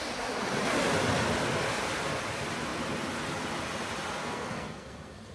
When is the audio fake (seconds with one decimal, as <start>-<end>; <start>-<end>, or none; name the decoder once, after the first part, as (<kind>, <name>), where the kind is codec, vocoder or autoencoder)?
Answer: 4.2-5.3 (codec, SNAC)